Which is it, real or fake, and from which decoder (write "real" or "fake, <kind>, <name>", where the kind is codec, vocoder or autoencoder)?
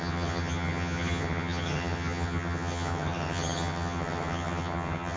fake, vocoder, HiFi-GAN